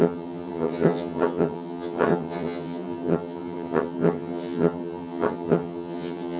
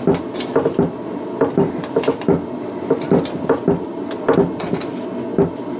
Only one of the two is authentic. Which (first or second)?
second